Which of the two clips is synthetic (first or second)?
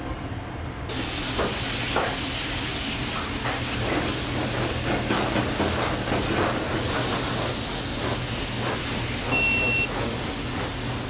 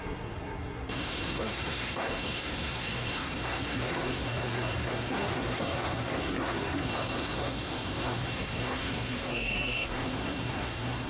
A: second